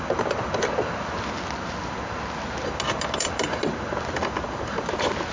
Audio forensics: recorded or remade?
recorded